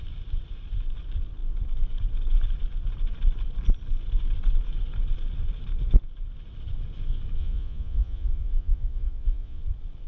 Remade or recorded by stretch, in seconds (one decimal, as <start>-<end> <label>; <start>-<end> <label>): 0.0-7.4 recorded; 7.4-9.6 remade; 9.6-10.1 recorded

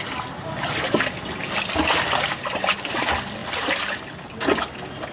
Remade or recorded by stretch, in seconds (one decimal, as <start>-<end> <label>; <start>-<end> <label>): 0.0-5.1 recorded

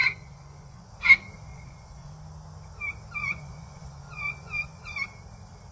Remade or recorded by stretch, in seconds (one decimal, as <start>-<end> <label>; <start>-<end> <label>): 0.0-0.9 remade; 0.9-1.5 recorded; 1.5-2.1 remade; 2.1-3.2 recorded; 3.2-5.0 remade; 5.0-5.7 recorded

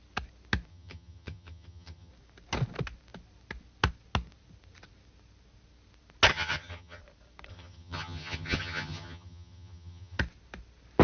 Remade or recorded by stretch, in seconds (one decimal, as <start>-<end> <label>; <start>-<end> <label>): 0.0-0.7 recorded; 0.7-2.1 remade; 2.1-6.3 recorded; 6.3-7.0 remade; 7.0-7.5 recorded; 7.5-10.2 remade; 10.2-11.0 recorded